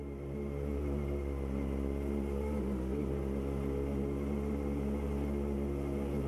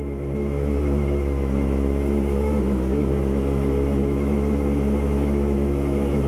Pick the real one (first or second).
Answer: first